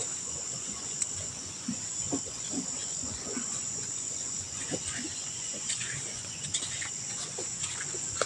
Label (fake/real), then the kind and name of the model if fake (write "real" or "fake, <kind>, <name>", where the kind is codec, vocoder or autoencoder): fake, vocoder, Vocos